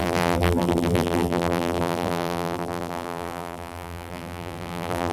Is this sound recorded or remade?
remade